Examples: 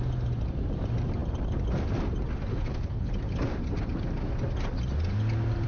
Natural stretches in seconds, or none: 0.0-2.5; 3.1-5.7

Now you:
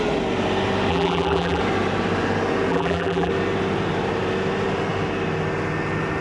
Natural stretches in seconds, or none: 0.0-0.9; 1.6-2.7; 3.3-6.2

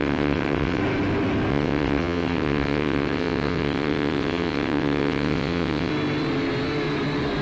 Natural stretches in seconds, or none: 0.8-1.5; 5.9-7.4

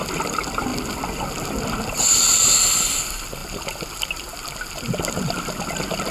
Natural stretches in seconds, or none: 0.0-6.1

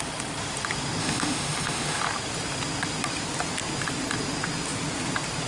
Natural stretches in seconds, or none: 0.0-1.0; 2.0-5.5